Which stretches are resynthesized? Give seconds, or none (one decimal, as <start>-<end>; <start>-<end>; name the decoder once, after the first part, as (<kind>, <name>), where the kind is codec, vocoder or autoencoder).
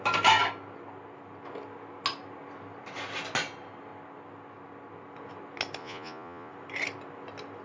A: 5.8-6.5 (vocoder, Vocos)